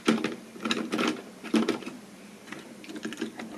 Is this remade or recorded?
recorded